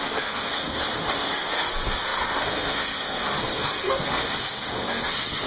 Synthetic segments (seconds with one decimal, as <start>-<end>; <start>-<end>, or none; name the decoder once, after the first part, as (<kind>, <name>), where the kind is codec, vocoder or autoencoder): 0.0-5.5 (codec, SNAC)